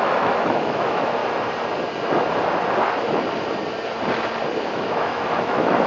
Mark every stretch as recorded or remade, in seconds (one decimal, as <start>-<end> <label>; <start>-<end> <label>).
0.0-1.2 remade; 1.2-4.7 recorded; 4.7-5.9 remade